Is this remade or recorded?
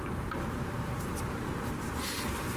remade